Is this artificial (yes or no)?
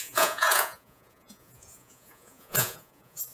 yes